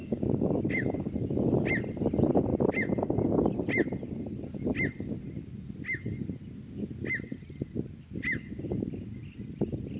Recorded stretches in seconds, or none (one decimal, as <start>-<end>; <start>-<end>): 1.1-10.0